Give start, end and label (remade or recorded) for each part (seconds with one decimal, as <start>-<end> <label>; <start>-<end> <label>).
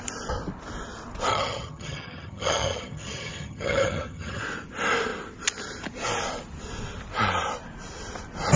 0.0-1.3 recorded; 1.3-4.4 remade; 4.4-8.6 recorded